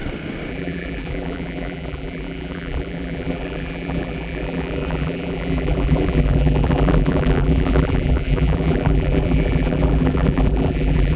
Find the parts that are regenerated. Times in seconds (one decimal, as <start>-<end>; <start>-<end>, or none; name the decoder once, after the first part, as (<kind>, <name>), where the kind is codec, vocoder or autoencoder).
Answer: 0.5-11.2 (vocoder, BigVGAN v2)